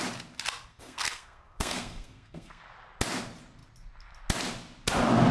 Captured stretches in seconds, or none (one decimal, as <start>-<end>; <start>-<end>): 0.0-0.7; 2.6-5.3